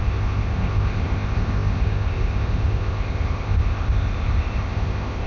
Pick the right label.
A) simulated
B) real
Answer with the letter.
A